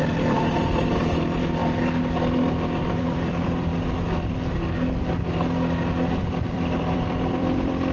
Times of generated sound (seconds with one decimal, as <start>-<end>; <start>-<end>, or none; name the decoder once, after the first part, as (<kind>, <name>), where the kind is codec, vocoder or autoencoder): 0.0-1.6 (vocoder, BigVGAN v2); 2.5-3.7; 6.2-7.9